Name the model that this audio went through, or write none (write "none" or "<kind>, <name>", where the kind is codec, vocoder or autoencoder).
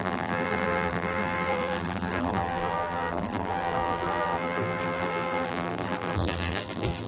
vocoder, BigVGAN v2